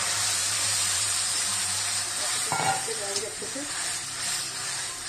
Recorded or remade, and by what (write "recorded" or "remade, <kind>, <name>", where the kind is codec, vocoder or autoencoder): remade, vocoder, BigVGAN v2